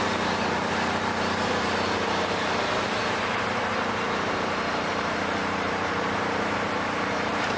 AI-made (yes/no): yes